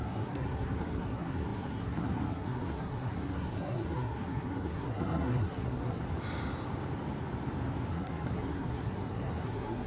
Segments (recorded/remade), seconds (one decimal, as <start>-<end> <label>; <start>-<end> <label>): 0.0-6.0 remade; 6.0-7.9 recorded; 7.9-9.9 remade